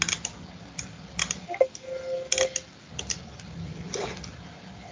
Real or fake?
real